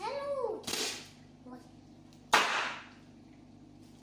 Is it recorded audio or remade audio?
recorded